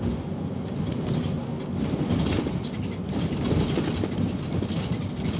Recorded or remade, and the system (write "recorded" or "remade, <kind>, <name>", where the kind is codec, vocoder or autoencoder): recorded